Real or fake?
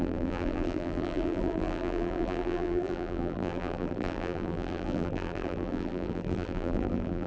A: fake